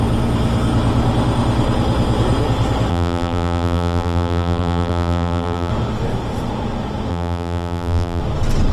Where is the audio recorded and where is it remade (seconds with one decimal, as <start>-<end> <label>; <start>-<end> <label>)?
0.0-2.9 recorded; 2.9-5.7 remade; 5.7-7.1 recorded; 7.1-8.2 remade; 8.2-8.7 recorded